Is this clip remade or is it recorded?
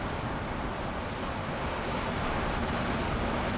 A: recorded